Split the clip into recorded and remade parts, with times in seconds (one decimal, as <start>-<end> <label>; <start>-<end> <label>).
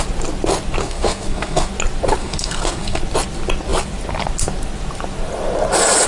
0.0-0.8 recorded; 0.8-1.7 remade; 1.7-2.2 recorded; 2.2-3.0 remade; 3.0-6.1 recorded